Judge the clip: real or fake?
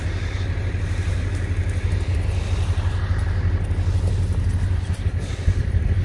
real